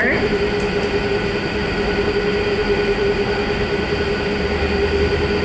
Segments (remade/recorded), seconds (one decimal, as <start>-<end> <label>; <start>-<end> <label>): 0.0-0.5 remade; 0.5-1.6 recorded; 1.6-2.1 remade; 2.1-2.6 recorded; 2.6-4.0 remade; 4.0-5.4 recorded